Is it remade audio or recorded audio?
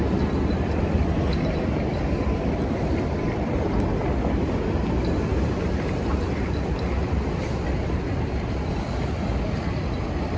recorded